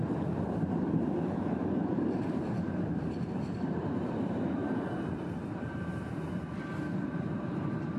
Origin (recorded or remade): remade